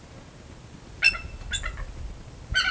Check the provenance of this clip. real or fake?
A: real